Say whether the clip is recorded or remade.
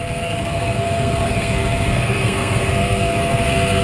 remade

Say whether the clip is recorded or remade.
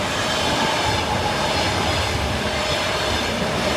recorded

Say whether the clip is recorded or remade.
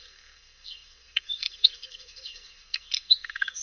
remade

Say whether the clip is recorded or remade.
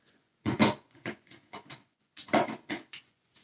remade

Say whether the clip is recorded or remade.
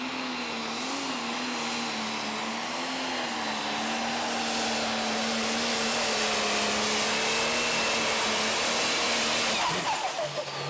recorded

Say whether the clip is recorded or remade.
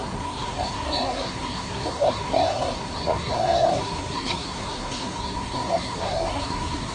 remade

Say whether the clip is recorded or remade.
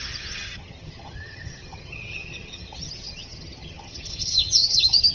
remade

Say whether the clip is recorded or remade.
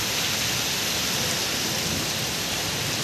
recorded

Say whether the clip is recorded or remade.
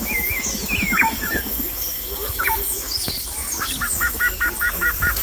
remade